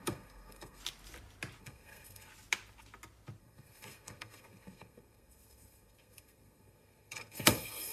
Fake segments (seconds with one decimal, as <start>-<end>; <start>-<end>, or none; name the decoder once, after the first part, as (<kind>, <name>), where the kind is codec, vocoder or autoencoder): 0.0-0.8 (codec, SNAC); 1.6-2.3; 3.4-7.9